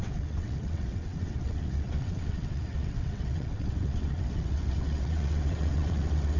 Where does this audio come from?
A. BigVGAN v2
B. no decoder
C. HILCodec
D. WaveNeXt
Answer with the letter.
D